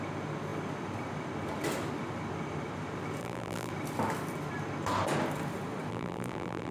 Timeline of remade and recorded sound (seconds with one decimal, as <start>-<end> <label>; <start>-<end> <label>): 0.0-3.2 recorded; 3.2-3.7 remade; 3.7-5.9 recorded; 5.9-6.7 remade